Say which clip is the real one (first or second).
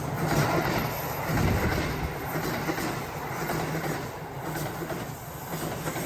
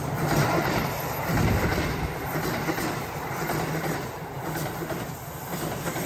first